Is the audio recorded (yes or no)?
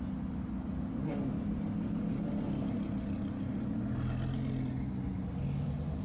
yes